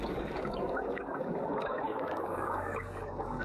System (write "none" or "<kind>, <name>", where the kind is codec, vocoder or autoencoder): codec, DAC